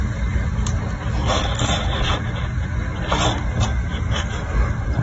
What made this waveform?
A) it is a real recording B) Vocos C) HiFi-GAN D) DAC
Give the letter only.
A